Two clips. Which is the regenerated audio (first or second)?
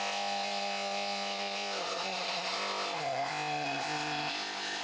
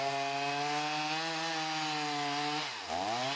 first